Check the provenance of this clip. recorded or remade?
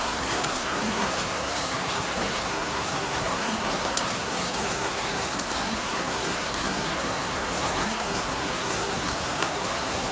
remade